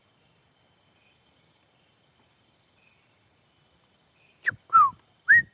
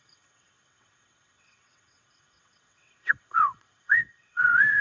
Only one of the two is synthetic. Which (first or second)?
second